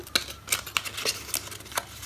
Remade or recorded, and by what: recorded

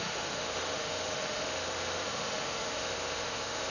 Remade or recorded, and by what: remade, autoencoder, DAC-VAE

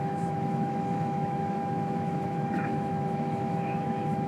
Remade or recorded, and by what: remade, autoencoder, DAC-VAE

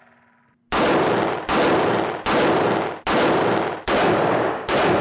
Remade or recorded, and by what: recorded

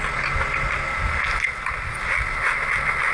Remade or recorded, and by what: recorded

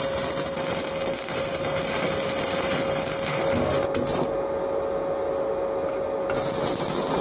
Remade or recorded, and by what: recorded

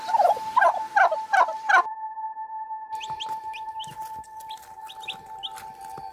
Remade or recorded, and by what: recorded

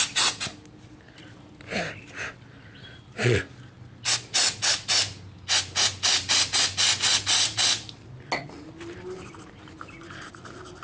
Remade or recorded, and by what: recorded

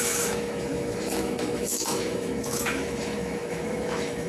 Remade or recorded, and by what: remade, autoencoder, DAC-VAE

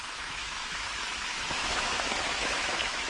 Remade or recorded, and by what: remade, autoencoder, DAC-VAE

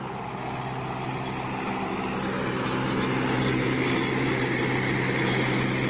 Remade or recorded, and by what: recorded